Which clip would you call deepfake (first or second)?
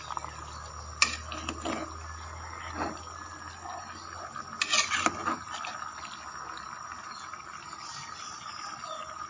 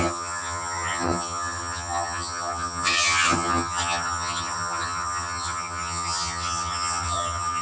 second